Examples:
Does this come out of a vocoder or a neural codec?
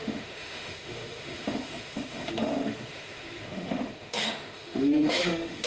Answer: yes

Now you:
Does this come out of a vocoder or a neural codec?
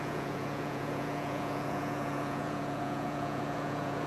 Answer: yes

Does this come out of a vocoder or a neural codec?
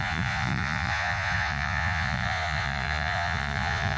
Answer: yes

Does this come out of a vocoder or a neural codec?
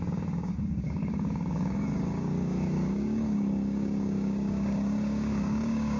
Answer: yes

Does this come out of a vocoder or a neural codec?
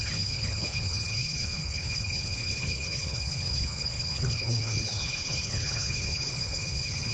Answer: yes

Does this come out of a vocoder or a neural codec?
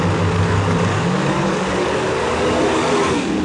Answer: yes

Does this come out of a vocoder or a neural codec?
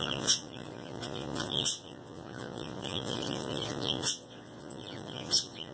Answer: yes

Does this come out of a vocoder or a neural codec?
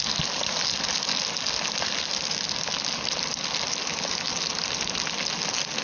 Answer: no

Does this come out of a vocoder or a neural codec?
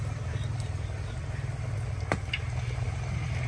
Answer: no